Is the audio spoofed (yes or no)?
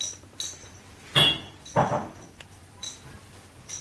no